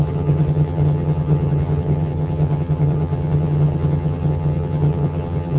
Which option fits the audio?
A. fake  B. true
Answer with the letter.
A